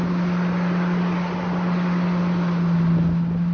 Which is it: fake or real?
real